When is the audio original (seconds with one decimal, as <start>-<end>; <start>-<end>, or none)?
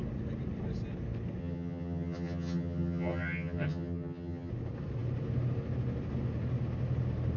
0.0-1.4; 4.5-7.4